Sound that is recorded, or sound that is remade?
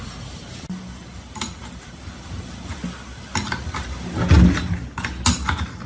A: recorded